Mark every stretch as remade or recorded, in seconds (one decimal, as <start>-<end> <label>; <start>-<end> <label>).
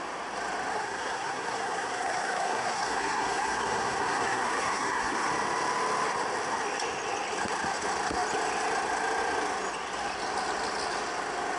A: 0.0-0.7 recorded; 0.7-5.3 remade; 5.3-11.6 recorded